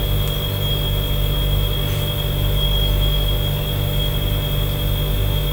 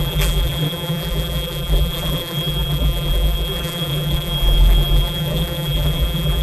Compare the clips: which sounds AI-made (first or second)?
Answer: second